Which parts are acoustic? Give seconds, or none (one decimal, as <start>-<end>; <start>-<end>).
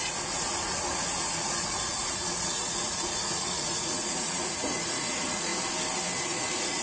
5.5-6.2